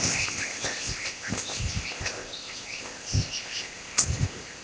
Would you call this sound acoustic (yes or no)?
no